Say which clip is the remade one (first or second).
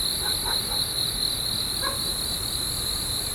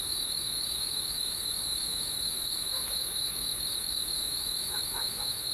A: second